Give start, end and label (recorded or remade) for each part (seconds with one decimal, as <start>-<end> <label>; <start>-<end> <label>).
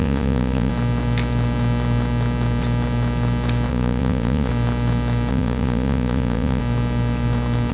0.0-0.7 remade; 0.7-3.7 recorded; 3.7-4.5 remade; 4.5-5.3 recorded; 5.3-6.6 remade; 6.6-7.7 recorded